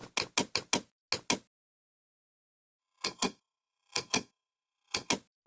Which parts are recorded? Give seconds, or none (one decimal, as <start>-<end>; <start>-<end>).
0.0-2.8; 5.1-5.5